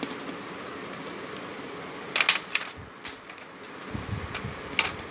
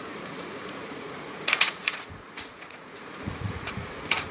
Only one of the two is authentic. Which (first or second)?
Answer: first